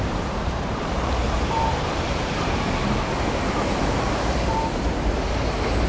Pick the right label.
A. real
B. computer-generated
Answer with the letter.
B